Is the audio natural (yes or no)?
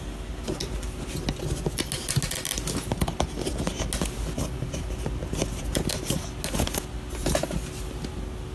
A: yes